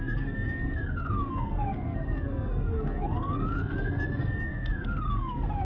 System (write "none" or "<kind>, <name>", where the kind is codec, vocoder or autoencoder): codec, SNAC